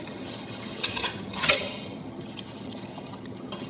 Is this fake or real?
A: fake